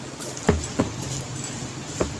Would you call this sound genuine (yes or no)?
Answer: yes